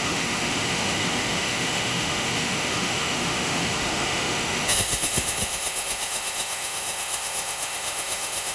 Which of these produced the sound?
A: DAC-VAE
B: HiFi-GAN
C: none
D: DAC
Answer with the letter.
A